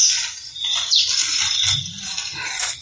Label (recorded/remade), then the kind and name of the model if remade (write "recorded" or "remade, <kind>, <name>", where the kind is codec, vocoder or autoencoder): recorded